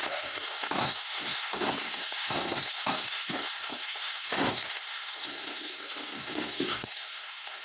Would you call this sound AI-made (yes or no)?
yes